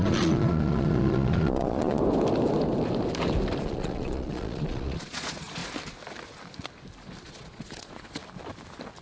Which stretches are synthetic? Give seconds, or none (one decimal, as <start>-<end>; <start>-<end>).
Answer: 0.0-2.0; 3.6-5.6; 7.2-8.2